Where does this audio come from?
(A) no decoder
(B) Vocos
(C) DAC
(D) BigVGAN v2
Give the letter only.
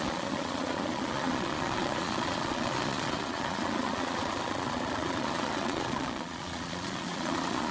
B